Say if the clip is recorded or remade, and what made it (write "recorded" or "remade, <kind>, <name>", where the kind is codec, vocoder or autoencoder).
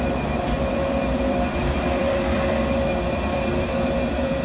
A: remade, vocoder, BigVGAN v2